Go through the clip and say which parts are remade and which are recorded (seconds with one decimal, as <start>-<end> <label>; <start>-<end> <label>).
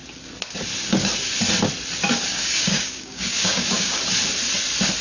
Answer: 0.0-2.3 recorded; 2.3-4.0 remade; 4.0-5.0 recorded